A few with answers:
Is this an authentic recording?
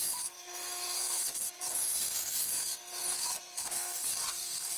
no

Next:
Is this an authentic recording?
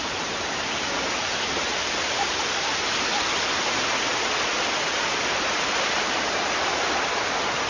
yes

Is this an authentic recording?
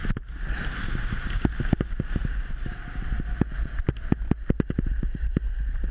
yes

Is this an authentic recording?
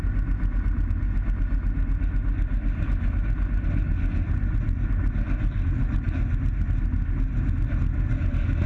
yes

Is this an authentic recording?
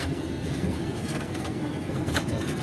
no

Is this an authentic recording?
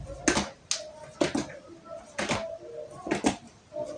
yes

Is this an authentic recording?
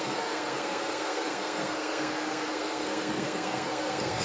no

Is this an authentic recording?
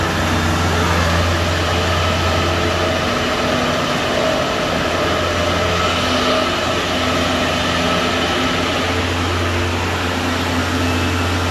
yes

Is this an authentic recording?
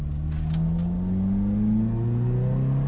yes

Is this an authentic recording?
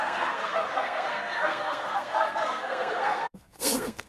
no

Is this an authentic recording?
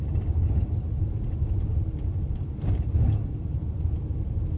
yes